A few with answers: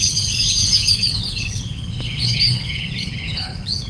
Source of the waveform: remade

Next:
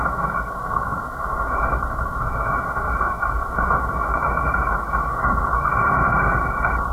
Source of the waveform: remade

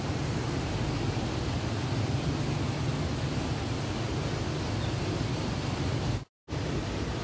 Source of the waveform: recorded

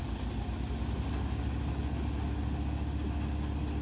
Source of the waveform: recorded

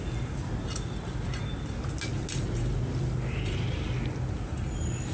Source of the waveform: recorded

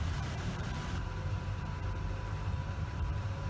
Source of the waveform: remade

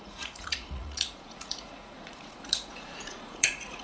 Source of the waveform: remade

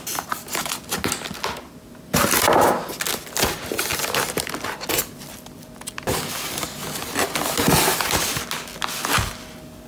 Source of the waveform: recorded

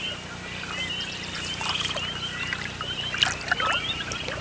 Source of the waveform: recorded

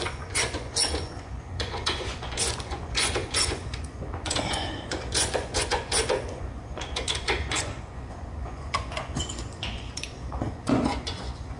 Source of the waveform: remade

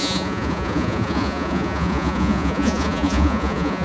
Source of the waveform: remade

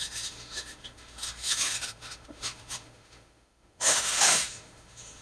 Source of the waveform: remade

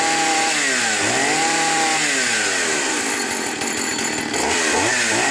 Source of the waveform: recorded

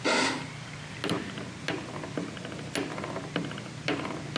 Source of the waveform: recorded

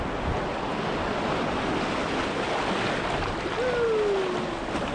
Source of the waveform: recorded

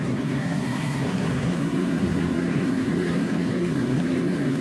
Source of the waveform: remade